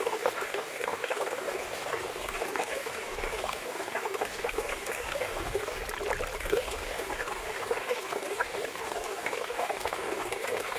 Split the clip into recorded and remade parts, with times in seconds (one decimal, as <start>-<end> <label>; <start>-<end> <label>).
0.0-5.8 remade; 5.8-6.4 recorded; 6.4-10.8 remade

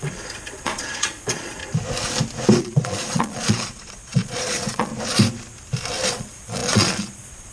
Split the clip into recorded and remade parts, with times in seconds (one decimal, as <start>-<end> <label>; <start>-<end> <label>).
0.0-1.6 remade; 1.6-2.6 recorded; 2.6-4.9 remade; 4.9-6.1 recorded; 6.1-7.5 remade

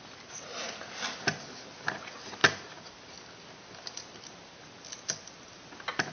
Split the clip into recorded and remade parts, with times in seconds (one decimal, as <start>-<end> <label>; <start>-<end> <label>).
0.0-6.1 recorded

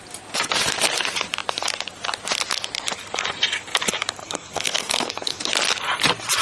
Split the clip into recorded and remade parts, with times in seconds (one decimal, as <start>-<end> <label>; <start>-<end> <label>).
0.0-4.2 recorded; 4.2-5.4 remade; 5.4-6.4 recorded

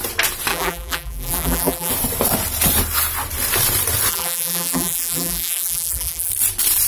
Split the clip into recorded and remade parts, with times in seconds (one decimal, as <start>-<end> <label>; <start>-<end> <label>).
0.0-0.5 recorded; 0.5-1.9 remade; 1.9-4.1 recorded; 4.1-6.3 remade; 6.3-6.9 recorded

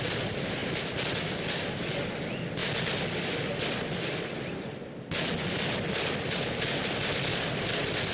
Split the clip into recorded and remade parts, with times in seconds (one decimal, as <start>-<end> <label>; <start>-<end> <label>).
0.0-8.1 recorded

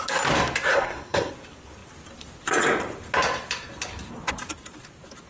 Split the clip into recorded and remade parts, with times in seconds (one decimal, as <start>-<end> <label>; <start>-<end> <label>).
0.0-0.7 recorded; 0.7-1.3 remade; 1.3-5.3 recorded